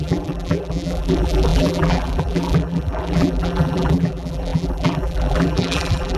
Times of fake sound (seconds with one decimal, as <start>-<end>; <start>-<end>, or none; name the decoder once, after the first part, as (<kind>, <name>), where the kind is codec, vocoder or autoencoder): 0.0-6.2 (vocoder, BigVGAN v2)